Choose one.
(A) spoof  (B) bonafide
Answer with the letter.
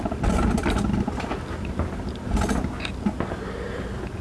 B